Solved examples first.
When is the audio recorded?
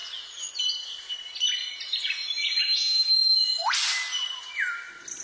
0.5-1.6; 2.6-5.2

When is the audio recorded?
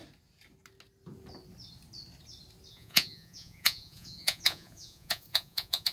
0.0-2.7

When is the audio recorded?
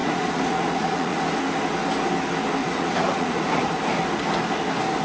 1.2-2.6; 3.8-5.0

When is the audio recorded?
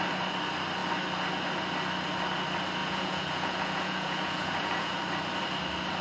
0.0-2.8; 5.0-6.0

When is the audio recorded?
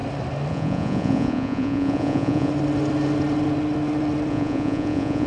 0.0-0.5; 2.5-4.3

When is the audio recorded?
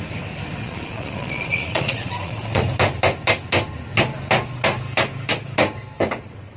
0.0-0.6; 2.6-6.6